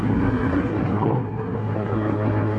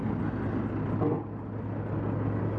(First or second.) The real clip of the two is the second